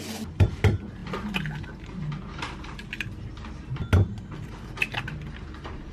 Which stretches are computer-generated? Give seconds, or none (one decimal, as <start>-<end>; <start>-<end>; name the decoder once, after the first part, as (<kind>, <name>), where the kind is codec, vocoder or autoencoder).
none